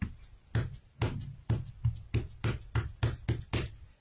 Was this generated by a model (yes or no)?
no